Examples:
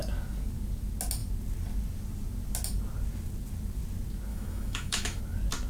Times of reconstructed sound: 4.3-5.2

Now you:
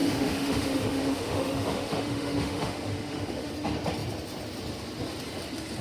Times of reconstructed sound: 0.0-3.5

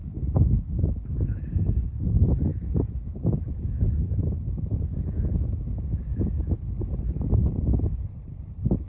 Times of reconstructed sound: 0.0-1.4; 2.5-6.8

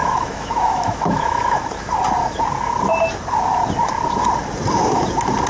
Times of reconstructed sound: 0.0-1.9